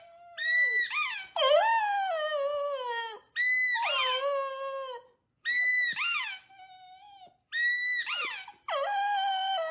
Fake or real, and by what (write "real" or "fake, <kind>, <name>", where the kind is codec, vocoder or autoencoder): real